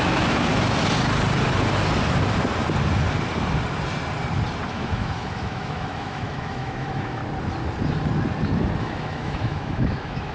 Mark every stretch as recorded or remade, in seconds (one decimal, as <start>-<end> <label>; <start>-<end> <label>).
0.0-0.5 remade; 0.5-4.7 recorded; 4.7-7.2 remade; 7.2-8.8 recorded; 8.8-10.3 remade